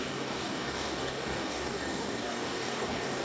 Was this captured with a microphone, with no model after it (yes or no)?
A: no